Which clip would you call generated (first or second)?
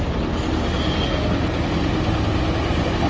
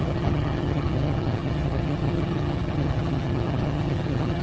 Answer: second